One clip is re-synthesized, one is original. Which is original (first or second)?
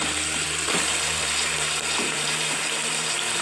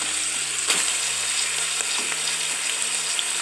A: second